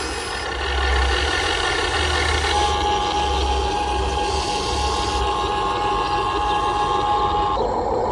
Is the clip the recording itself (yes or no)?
yes